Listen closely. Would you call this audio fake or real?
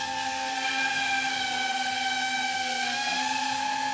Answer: fake